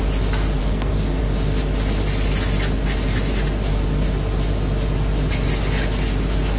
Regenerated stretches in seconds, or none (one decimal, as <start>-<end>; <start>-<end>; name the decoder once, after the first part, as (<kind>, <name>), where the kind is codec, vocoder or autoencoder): 0.6-1.2 (codec, SNAC)